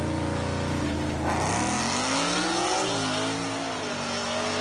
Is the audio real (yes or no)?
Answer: yes